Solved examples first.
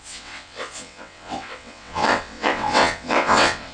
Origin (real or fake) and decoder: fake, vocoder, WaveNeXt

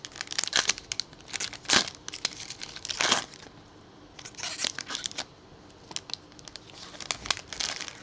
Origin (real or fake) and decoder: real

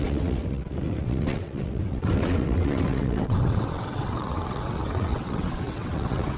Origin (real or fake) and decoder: fake, vocoder, WaveNeXt